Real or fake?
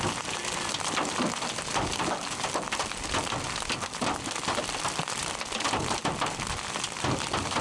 real